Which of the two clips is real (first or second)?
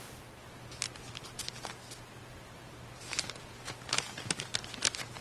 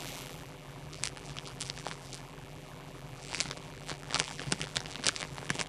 first